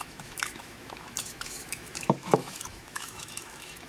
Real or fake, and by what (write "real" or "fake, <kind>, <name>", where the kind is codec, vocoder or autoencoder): fake, autoencoder, DAC-VAE